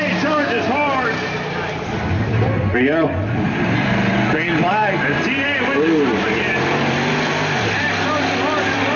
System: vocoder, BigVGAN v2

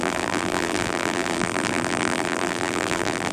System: vocoder, BigVGAN v2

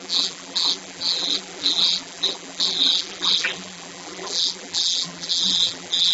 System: vocoder, BigVGAN v2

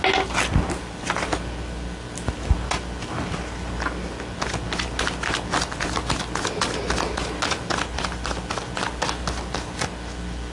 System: none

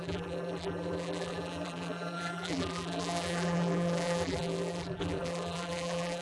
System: vocoder, BigVGAN v2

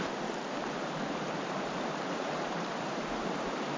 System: vocoder, BigVGAN v2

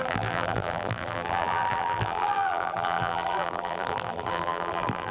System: vocoder, BigVGAN v2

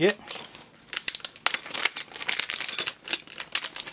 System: none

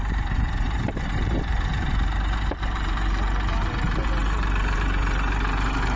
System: vocoder, BigVGAN v2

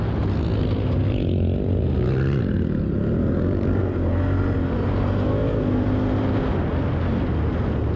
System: none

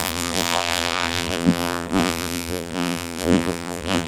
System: vocoder, BigVGAN v2